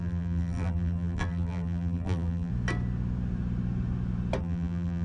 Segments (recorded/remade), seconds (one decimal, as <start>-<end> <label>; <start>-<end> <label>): 0.0-2.5 remade; 2.5-4.4 recorded; 4.4-5.0 remade